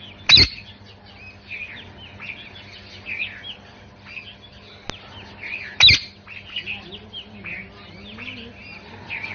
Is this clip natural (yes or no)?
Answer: yes